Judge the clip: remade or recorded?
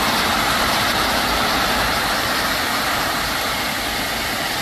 recorded